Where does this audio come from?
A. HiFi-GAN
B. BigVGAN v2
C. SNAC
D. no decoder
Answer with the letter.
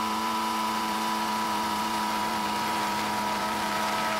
B